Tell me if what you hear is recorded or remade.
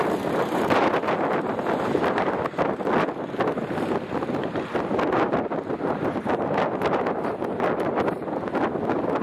recorded